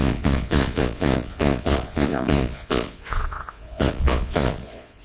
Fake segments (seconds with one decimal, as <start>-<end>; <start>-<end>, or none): 0.0-5.0

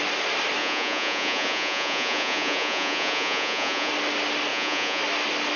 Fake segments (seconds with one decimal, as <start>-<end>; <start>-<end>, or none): 0.6-3.9; 4.5-5.0

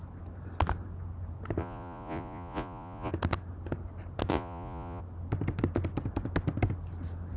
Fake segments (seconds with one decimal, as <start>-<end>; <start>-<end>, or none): 1.6-3.1; 4.3-5.0

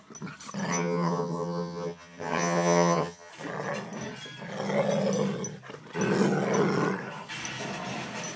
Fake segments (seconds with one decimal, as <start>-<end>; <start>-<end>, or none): 0.7-3.3

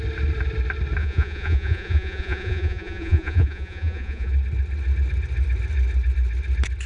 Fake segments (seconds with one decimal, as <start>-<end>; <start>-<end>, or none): 1.0-4.3

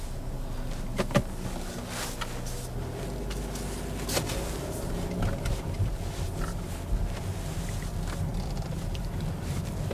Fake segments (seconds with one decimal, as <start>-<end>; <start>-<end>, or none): 8.3-9.0